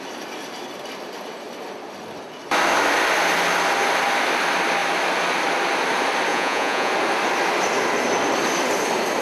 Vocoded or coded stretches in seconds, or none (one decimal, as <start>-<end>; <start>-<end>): 6.3-6.9